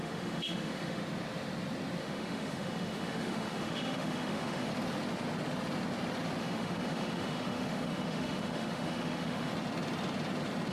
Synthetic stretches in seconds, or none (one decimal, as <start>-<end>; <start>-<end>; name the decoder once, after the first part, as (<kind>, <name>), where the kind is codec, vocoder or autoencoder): 0.0-1.0 (autoencoder, DAC-VAE); 2.0-4.7; 6.4-9.5